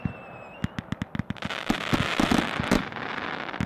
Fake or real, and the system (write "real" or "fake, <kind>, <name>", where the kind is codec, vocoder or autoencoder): real